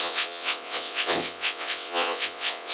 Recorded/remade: remade